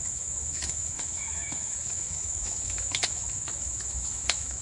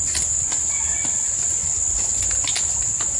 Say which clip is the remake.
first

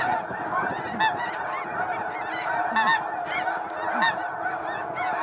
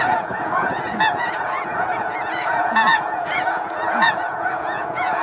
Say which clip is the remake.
second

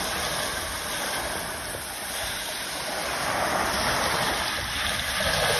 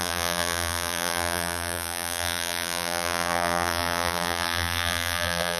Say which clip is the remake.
second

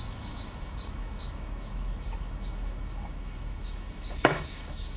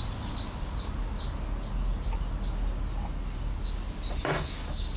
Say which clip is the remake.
first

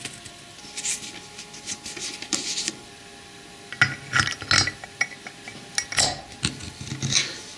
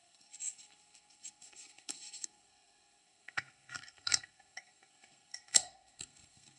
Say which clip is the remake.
second